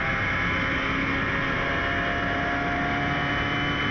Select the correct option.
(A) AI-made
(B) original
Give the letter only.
B